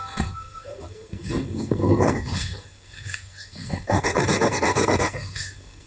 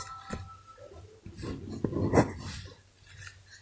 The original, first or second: second